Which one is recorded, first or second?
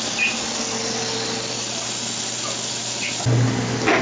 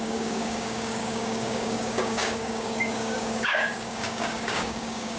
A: first